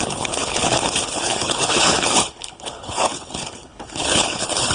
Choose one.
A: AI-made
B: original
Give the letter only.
A